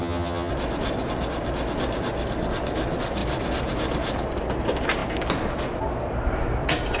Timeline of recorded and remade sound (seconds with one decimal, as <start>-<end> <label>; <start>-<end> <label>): 0.0-0.5 remade; 0.5-7.0 recorded